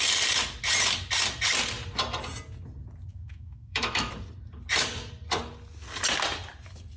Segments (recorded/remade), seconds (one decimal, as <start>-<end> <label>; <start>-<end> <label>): 0.0-3.1 recorded; 3.1-4.1 remade; 4.1-7.0 recorded